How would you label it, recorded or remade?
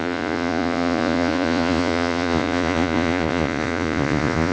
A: remade